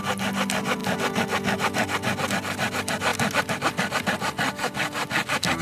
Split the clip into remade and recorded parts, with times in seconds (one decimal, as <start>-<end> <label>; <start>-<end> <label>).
0.0-5.6 recorded